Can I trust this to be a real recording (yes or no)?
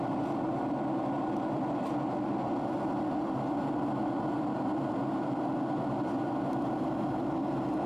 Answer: yes